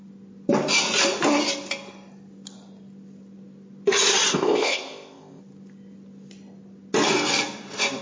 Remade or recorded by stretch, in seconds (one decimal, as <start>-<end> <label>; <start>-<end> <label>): 0.0-4.3 recorded; 4.3-5.4 remade; 5.4-8.0 recorded